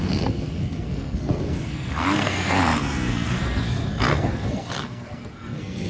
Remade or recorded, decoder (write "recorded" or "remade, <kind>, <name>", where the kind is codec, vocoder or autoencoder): remade, codec, SNAC